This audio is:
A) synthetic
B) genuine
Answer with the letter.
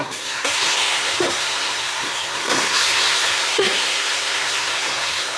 A